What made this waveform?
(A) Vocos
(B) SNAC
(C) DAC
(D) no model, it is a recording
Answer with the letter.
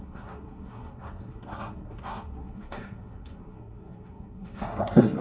B